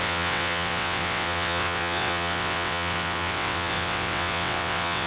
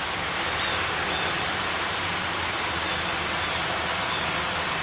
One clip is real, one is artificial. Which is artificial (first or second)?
first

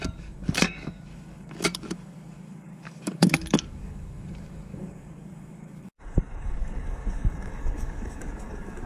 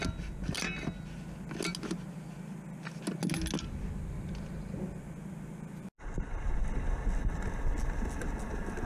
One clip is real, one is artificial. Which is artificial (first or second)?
first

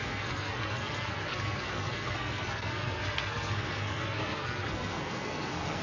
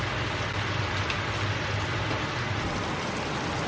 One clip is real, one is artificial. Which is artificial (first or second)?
first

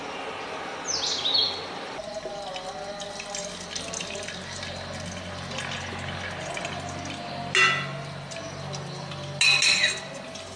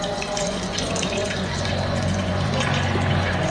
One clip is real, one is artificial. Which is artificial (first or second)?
second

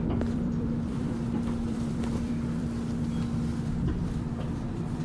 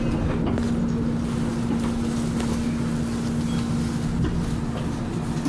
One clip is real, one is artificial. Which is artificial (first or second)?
first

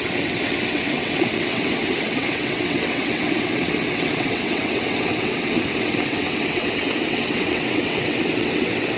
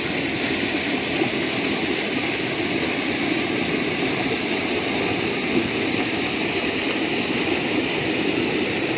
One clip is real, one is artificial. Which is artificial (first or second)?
first